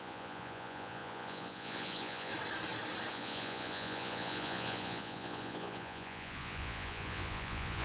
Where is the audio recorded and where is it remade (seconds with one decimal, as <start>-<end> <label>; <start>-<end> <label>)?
0.0-2.3 remade; 2.3-3.1 recorded; 3.1-7.8 remade